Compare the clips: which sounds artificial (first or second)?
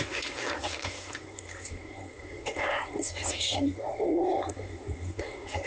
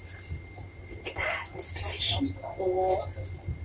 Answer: first